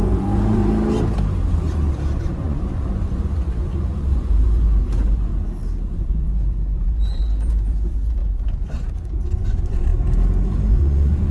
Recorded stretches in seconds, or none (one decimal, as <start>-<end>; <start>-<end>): 0.6-2.2; 5.3-5.9; 9.9-10.7